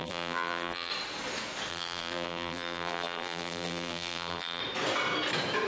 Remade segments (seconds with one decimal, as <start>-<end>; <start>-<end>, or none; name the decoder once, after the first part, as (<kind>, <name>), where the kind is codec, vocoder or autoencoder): 0.0-0.9 (vocoder, BigVGAN v2); 1.7-4.6